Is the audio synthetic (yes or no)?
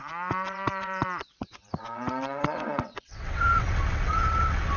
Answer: yes